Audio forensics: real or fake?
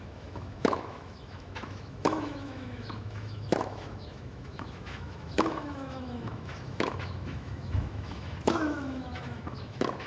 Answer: fake